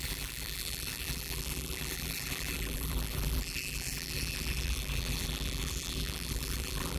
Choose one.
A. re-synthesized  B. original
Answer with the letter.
A